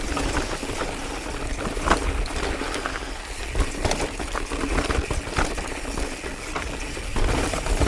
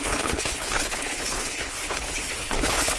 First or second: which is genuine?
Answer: first